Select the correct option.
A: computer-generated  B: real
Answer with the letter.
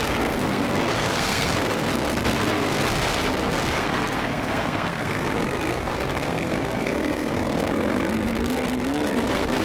A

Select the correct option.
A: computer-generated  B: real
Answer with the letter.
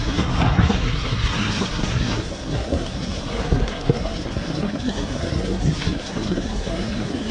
A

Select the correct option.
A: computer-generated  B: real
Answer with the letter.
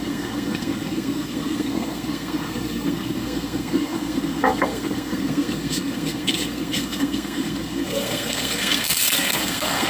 A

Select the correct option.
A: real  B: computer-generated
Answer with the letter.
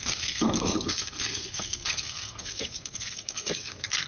B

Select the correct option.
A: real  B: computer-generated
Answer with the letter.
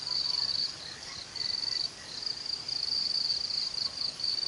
A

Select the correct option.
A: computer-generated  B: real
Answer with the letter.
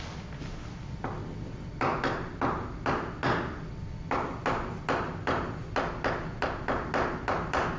B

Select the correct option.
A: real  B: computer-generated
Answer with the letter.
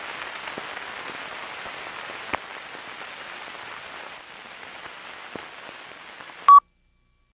A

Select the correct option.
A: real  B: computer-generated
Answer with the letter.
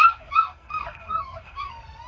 B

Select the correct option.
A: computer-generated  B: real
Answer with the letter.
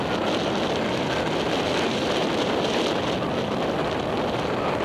B